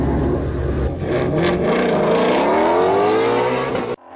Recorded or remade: recorded